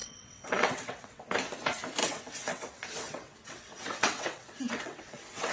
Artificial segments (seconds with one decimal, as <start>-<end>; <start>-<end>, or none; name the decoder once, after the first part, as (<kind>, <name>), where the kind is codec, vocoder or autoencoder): 0.0-1.2 (vocoder, WaveNeXt); 2.0-5.5